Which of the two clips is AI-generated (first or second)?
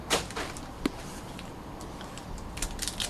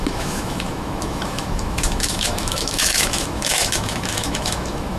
second